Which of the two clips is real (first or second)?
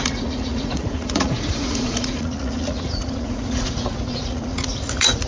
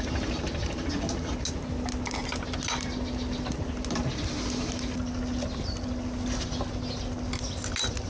second